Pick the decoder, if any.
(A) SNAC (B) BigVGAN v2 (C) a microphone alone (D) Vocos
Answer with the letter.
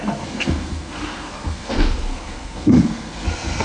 A